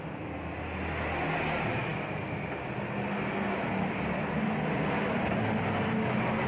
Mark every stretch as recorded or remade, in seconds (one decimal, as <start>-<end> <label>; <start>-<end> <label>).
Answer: 0.0-6.5 recorded